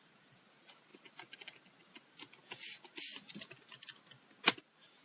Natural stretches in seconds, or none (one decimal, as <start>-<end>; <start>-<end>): 0.0-5.0